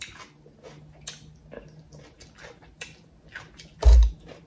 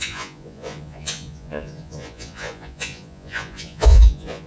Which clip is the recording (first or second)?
first